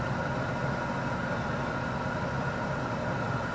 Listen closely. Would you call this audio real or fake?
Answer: real